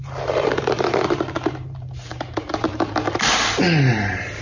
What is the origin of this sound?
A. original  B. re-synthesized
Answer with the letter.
B